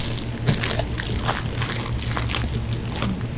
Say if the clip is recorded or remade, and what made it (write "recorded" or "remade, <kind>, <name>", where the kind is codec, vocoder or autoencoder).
recorded